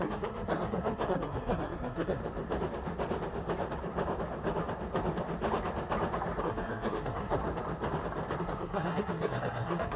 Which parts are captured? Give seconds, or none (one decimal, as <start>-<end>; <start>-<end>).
2.2-6.4; 7.4-8.4